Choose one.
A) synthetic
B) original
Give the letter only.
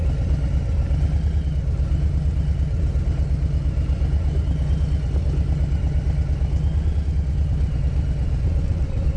B